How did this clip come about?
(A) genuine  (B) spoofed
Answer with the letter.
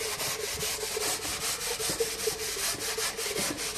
A